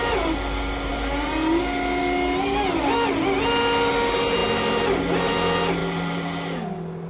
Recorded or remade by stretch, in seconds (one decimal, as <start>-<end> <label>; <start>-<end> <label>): 0.0-4.4 recorded; 4.4-5.3 remade; 5.3-5.8 recorded; 5.8-7.1 remade